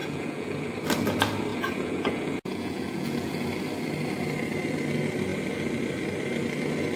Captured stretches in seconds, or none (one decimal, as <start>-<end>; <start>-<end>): 0.7-1.5; 3.3-7.0